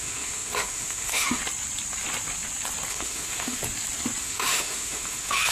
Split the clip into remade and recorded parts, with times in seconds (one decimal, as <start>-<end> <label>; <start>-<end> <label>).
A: 0.0-1.4 remade; 1.4-2.9 recorded; 2.9-3.6 remade; 3.6-4.2 recorded; 4.2-5.5 remade